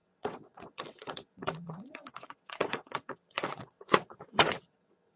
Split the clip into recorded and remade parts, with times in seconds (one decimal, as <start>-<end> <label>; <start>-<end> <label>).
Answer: 0.0-5.2 remade